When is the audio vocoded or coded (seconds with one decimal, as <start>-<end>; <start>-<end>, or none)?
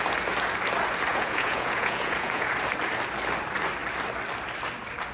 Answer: 1.1-2.5